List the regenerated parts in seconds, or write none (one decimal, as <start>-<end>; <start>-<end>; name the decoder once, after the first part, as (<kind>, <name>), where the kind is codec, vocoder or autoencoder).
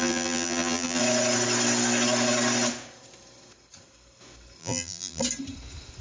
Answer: 0.0-1.0 (vocoder, BigVGAN v2); 4.6-5.2